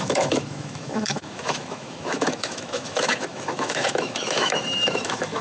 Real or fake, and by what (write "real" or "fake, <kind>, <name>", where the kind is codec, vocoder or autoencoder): fake, autoencoder, DAC-VAE